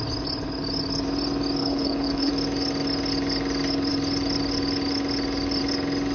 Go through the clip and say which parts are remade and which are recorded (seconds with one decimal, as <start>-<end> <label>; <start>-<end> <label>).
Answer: 0.0-1.6 recorded; 1.6-2.3 remade; 2.3-6.1 recorded